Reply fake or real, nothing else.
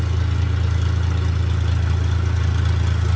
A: real